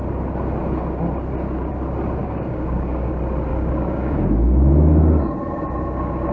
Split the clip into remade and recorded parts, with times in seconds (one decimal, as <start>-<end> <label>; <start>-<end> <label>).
0.0-2.2 recorded; 2.2-3.1 remade; 3.1-3.5 recorded; 3.5-5.0 remade; 5.0-6.3 recorded